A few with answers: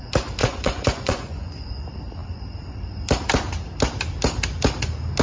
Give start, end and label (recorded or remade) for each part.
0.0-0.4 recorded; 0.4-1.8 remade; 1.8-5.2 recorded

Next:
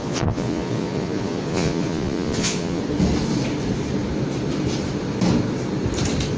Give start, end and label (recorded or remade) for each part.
0.0-2.8 remade; 2.8-6.4 recorded

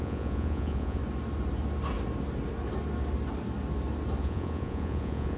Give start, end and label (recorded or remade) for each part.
0.0-1.0 remade; 1.0-4.2 recorded; 4.2-5.4 remade

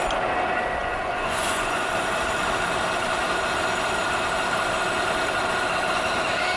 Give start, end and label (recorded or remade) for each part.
0.0-0.8 recorded; 0.8-1.9 remade; 1.9-6.6 recorded

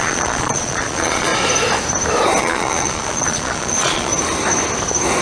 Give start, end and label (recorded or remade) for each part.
0.0-1.3 remade; 1.3-2.4 recorded; 2.4-4.1 remade; 4.1-5.2 recorded